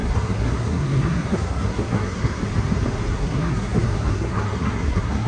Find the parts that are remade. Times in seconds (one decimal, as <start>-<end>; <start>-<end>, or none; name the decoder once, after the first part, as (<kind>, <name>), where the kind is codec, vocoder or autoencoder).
0.0-2.4 (codec, SNAC); 3.1-5.3